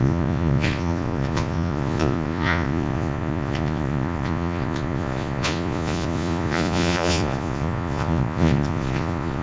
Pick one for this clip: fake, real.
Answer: fake